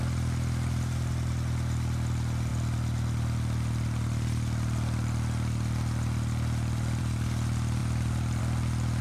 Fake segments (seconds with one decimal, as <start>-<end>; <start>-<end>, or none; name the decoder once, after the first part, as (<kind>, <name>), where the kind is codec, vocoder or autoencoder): none